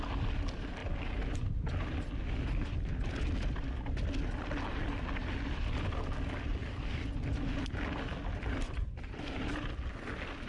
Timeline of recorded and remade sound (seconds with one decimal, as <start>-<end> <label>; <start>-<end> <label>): 0.0-10.5 recorded